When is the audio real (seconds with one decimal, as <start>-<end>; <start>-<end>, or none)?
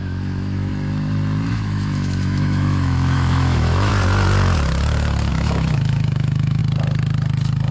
0.7-1.5; 3.9-5.3; 6.6-7.7